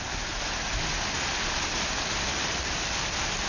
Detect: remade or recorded recorded